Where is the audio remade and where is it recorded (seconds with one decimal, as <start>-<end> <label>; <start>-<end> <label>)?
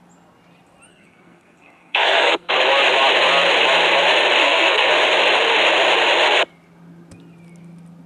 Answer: 0.0-0.9 recorded; 0.9-2.5 remade; 2.5-4.4 recorded; 4.4-4.9 remade; 4.9-8.1 recorded